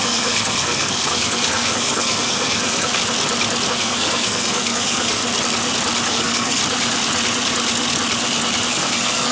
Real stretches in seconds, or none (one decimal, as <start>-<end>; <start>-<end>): 3.0-3.7; 5.2-6.1; 6.6-8.7